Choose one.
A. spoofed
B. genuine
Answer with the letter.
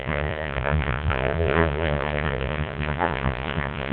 A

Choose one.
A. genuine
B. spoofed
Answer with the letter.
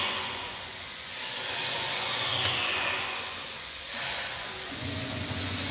B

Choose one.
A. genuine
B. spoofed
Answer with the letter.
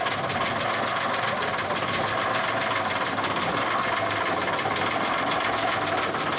A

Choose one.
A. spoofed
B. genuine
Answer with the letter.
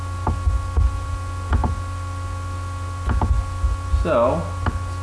B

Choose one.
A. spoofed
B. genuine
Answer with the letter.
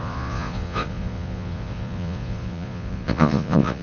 A